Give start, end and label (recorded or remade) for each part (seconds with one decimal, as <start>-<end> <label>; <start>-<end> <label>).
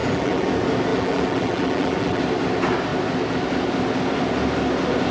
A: 0.0-0.5 remade; 0.5-0.9 recorded; 0.9-2.2 remade; 2.2-5.1 recorded